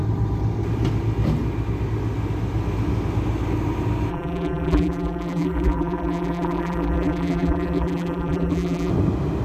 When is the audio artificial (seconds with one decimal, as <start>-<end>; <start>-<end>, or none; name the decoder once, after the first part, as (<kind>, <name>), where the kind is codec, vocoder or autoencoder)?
4.1-8.9 (vocoder, BigVGAN v2)